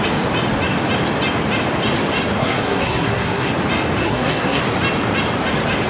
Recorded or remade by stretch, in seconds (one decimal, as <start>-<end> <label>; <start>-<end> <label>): 0.0-2.4 recorded; 2.4-3.5 remade; 3.5-4.0 recorded; 4.0-4.6 remade; 4.6-5.9 recorded